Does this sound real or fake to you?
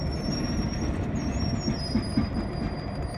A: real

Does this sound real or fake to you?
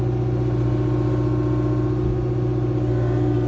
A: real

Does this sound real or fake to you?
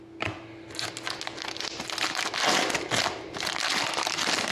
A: real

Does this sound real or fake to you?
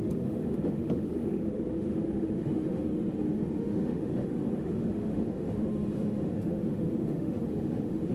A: fake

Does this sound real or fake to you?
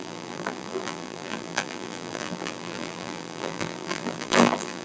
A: fake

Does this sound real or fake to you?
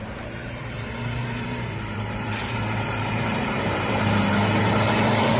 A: fake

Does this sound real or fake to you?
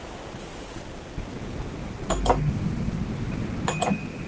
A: real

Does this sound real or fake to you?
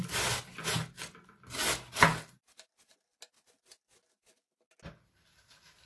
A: real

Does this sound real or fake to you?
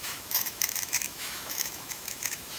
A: fake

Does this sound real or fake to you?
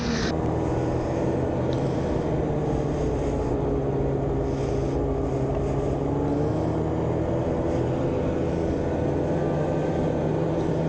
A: real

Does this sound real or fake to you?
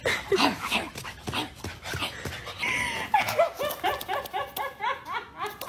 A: real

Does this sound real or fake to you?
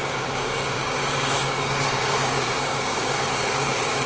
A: fake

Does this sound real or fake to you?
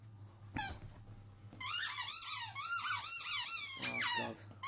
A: real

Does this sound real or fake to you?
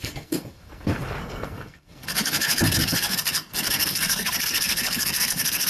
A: fake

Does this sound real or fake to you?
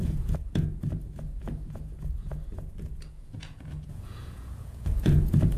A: fake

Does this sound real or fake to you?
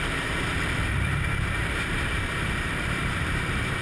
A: fake